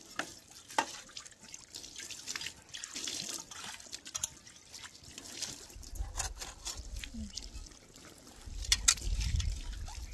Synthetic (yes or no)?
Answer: no